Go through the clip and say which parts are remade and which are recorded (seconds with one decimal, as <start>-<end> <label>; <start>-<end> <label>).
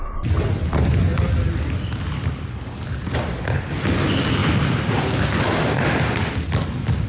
0.0-7.1 recorded